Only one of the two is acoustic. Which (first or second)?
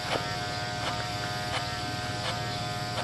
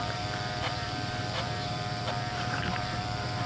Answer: first